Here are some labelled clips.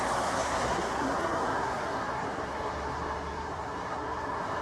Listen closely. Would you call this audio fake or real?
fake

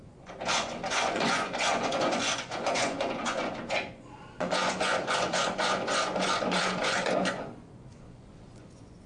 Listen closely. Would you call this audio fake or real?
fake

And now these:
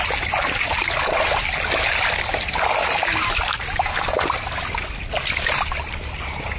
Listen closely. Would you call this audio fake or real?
real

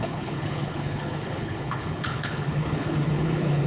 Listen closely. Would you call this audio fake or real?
fake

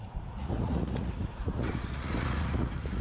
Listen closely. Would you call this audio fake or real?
fake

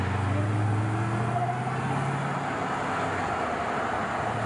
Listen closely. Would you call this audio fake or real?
real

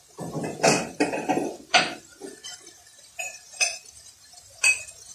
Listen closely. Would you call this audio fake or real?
real